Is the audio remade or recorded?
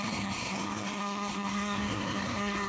remade